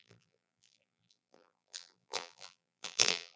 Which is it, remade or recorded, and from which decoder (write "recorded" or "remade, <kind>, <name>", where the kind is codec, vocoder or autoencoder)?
remade, vocoder, BigVGAN v2